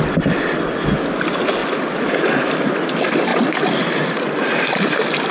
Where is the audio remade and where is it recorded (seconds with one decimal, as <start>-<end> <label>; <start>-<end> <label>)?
0.0-5.3 recorded